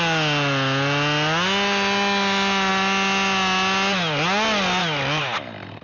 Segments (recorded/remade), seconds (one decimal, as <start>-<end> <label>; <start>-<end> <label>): 0.0-5.8 recorded